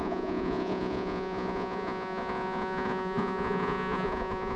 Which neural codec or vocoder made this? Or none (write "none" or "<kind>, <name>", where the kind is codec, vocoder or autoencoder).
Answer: vocoder, Vocos